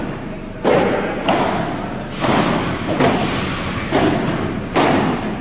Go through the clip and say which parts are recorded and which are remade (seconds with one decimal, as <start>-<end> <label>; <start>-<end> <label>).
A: 0.0-5.4 recorded